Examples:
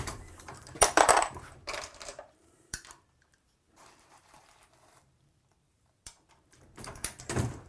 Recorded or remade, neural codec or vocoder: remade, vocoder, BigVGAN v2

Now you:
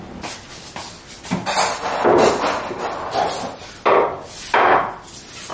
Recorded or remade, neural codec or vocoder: recorded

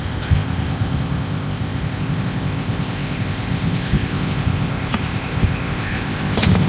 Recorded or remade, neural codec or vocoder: remade, codec, ZipCodec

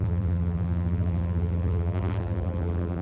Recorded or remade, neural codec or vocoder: remade, vocoder, BigVGAN v2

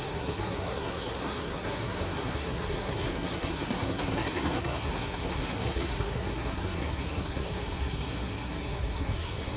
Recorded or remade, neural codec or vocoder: remade, codec, SNAC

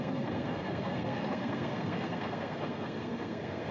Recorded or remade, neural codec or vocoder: remade, codec, SNAC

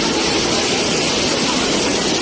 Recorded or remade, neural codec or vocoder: recorded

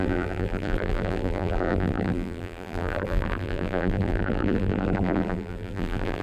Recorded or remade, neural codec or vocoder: remade, vocoder, BigVGAN v2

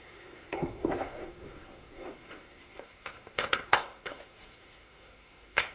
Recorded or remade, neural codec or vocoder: remade, codec, SNAC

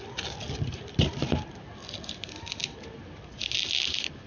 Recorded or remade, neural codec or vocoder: recorded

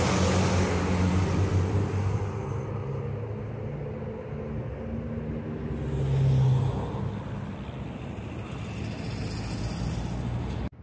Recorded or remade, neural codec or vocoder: recorded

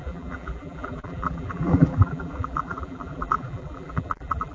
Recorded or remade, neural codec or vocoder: remade, vocoder, BigVGAN v2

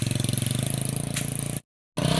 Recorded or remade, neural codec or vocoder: recorded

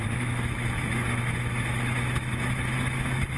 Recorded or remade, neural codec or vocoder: remade, autoencoder, DAC-VAE